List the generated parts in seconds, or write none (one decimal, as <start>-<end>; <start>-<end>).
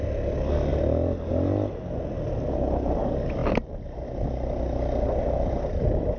none